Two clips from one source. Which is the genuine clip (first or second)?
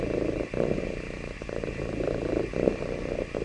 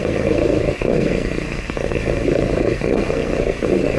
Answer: first